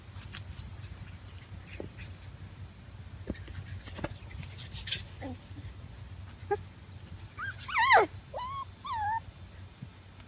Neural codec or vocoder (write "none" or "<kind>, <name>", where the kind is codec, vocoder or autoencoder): none